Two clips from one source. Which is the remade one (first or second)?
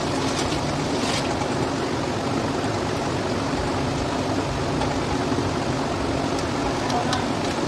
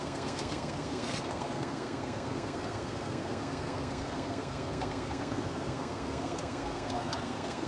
second